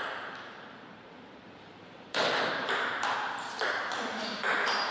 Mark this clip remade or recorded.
remade